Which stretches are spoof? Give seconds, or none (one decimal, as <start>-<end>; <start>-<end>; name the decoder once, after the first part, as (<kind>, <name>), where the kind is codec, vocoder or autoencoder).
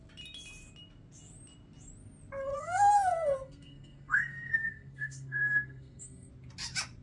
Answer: 2.5-6.3 (codec, SNAC)